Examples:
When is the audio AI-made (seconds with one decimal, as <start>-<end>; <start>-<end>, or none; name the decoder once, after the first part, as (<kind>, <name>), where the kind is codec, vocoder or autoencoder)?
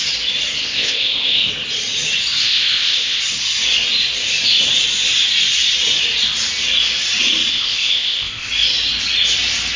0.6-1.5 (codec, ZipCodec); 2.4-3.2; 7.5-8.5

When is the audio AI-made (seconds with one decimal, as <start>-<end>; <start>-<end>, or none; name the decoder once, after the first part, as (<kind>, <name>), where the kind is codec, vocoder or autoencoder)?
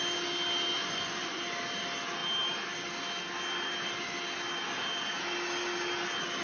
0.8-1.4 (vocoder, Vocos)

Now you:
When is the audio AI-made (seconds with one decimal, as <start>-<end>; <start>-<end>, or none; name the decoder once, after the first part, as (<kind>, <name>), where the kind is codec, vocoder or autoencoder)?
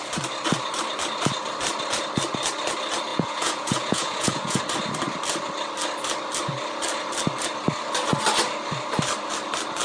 3.1-4.6 (vocoder, Vocos)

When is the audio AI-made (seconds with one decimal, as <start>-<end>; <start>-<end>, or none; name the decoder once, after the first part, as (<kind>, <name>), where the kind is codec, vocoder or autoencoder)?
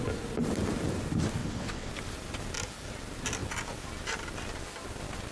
1.4-1.9 (vocoder, WaveNeXt)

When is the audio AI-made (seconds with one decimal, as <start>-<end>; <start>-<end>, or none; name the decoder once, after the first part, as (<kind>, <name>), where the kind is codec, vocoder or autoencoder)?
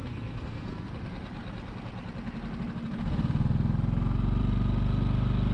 0.0-0.9 (codec, SNAC)